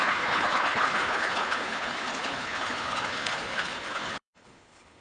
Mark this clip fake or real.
fake